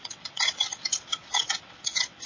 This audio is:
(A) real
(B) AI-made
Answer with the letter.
B